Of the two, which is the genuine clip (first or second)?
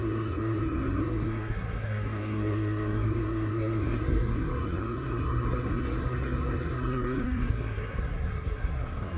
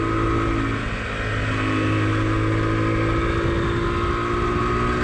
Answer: second